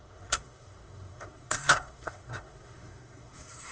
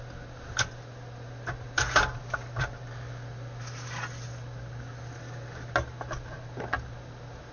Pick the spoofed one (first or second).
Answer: first